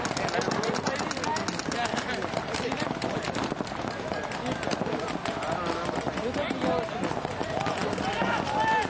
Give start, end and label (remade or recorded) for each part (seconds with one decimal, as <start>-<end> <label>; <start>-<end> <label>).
0.0-8.9 recorded